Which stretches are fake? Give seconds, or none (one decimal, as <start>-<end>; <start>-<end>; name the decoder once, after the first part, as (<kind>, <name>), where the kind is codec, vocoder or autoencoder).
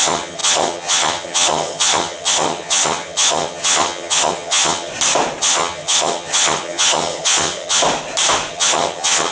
0.0-4.9 (vocoder, HiFi-GAN); 5.4-7.8; 8.5-9.3